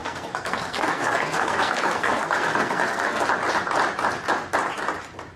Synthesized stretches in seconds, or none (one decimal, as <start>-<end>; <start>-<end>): 0.0-3.2